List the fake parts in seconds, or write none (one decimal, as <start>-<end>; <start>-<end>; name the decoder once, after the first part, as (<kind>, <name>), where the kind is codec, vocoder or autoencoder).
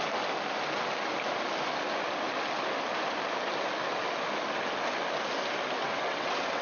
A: 5.8-6.6 (vocoder, WaveNeXt)